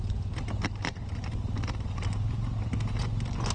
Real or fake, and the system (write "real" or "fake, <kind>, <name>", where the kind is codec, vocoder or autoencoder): real